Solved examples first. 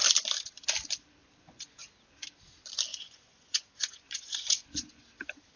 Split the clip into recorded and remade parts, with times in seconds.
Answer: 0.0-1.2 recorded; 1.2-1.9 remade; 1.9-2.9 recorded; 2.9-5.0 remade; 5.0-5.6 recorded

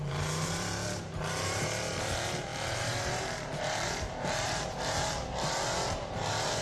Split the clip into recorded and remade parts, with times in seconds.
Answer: 0.0-6.6 remade

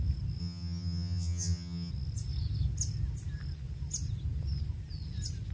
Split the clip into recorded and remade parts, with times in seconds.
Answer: 0.0-0.4 recorded; 0.4-1.9 remade; 1.9-5.5 recorded

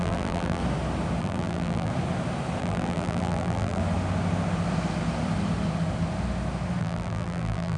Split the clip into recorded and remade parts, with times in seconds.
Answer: 0.0-0.6 remade; 0.6-1.2 recorded; 1.2-1.9 remade; 1.9-2.6 recorded; 2.6-3.8 remade; 3.8-6.8 recorded; 6.8-7.8 remade

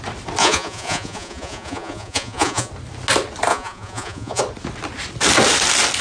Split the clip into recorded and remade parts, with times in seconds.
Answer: 0.0-0.4 recorded; 0.4-2.7 remade; 2.7-3.5 recorded; 3.5-4.4 remade; 4.4-6.0 recorded

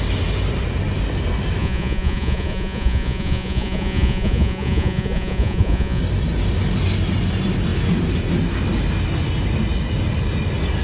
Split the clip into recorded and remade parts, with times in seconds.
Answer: 0.0-1.6 recorded; 1.6-6.0 remade; 6.0-10.8 recorded